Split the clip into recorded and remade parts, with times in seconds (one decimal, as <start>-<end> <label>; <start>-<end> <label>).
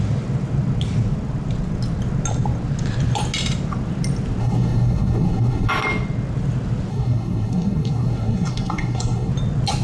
0.0-4.4 recorded; 4.4-5.7 remade; 5.7-6.9 recorded; 6.9-9.3 remade; 9.3-9.8 recorded